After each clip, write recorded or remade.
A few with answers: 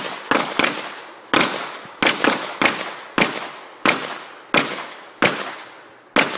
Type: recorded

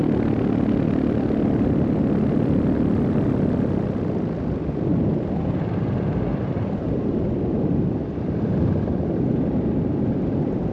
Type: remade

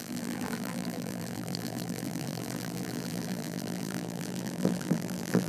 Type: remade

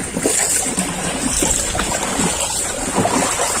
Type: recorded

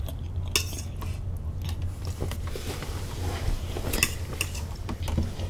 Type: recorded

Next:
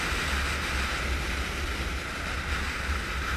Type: recorded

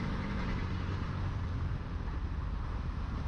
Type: remade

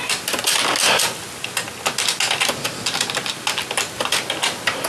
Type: recorded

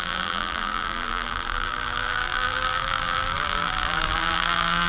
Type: remade